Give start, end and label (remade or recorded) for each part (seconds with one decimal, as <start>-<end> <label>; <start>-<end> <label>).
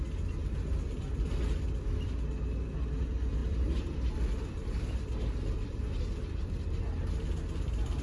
0.0-3.4 recorded; 3.4-6.8 remade; 6.8-8.0 recorded